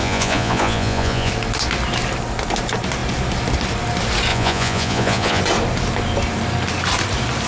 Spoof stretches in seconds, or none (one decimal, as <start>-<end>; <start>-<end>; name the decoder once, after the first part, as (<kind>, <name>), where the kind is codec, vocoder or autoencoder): 0.0-1.3 (vocoder, Vocos); 4.3-5.4